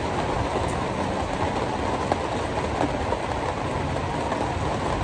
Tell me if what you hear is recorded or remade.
recorded